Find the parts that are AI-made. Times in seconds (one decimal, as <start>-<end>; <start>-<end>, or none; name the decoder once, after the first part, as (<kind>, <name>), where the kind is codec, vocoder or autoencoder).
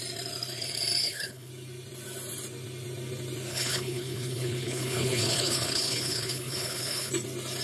1.0-1.5 (codec, HILCodec); 3.5-7.1